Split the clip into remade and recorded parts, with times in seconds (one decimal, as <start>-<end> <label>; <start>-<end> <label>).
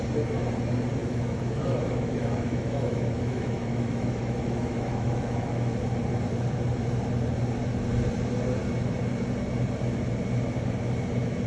0.0-1.0 recorded; 1.0-5.8 remade; 5.8-11.5 recorded